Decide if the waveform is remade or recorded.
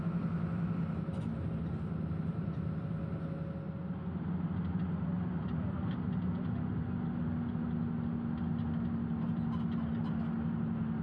recorded